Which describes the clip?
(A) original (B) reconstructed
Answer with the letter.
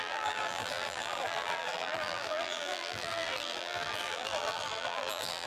B